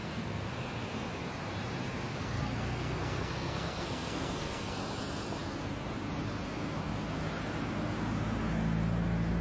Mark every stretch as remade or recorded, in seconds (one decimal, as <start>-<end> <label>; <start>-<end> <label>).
0.0-0.5 remade; 0.5-2.1 recorded; 2.1-4.8 remade; 4.8-9.4 recorded